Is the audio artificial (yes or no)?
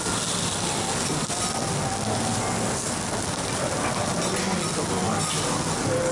no